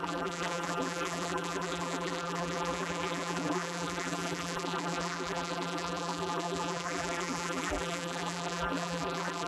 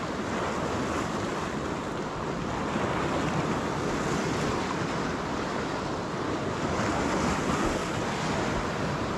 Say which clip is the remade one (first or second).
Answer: first